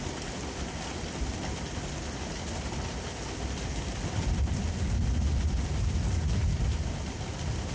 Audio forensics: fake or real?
real